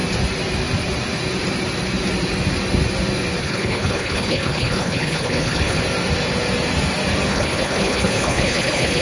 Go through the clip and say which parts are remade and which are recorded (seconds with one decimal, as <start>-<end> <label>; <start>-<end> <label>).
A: 0.0-3.4 recorded; 3.4-5.8 remade; 5.8-7.3 recorded; 7.3-9.0 remade